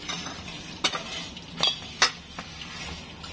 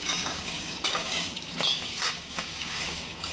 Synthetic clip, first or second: second